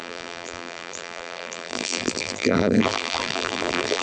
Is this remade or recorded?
remade